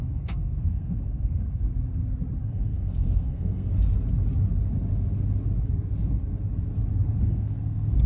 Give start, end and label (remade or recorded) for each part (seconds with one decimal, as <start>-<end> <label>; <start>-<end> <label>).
0.0-1.7 remade; 1.7-2.4 recorded; 2.4-3.7 remade; 3.7-7.2 recorded; 7.2-8.1 remade